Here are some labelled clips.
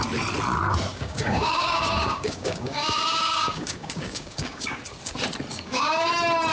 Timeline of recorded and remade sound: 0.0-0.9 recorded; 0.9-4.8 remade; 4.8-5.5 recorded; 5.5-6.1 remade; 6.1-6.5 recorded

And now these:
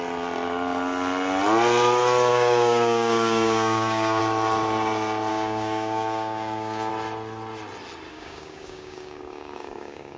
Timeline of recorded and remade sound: 0.0-2.3 recorded; 2.3-4.2 remade; 4.2-5.3 recorded; 5.3-6.9 remade; 6.9-8.1 recorded; 8.1-10.2 remade

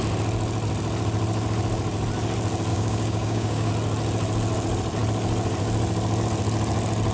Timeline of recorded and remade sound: 0.0-2.7 recorded; 2.7-3.7 remade; 3.7-7.1 recorded

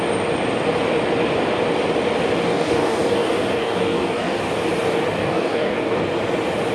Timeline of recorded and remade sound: 0.0-2.5 recorded; 2.5-4.4 remade; 4.4-5.2 recorded; 5.2-6.0 remade; 6.0-6.7 recorded

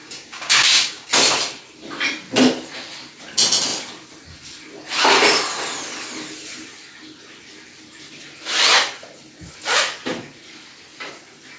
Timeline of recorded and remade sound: 0.0-1.1 remade; 1.1-11.6 recorded